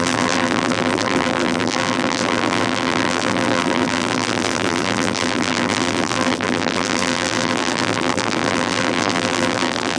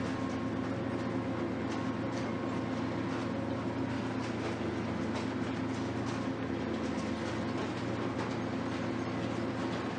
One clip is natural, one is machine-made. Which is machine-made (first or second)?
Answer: first